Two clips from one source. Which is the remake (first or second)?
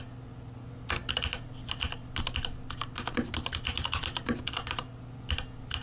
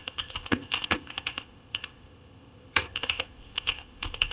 second